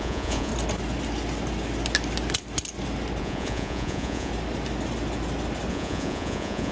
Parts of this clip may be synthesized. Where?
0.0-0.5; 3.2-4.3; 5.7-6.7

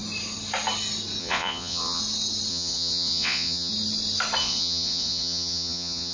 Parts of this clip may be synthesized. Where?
1.2-2.0; 2.5-3.7; 4.4-6.1

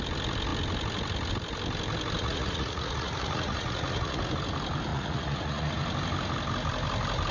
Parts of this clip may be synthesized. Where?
2.2-4.2; 4.9-5.7

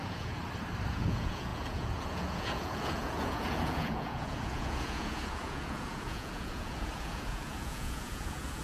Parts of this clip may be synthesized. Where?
0.0-0.4; 0.9-8.6

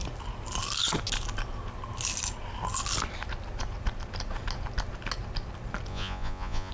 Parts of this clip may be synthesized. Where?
5.9-6.7

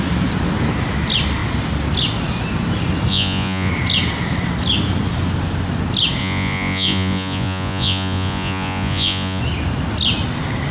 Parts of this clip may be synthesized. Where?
3.1-3.7; 6.2-9.4

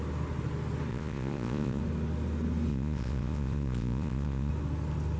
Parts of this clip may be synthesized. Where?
0.9-1.8; 2.7-4.5